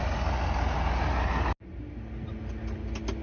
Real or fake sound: real